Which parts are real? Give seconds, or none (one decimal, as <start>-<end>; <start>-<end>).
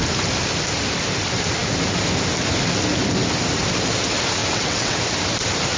0.0-4.4; 5.0-5.8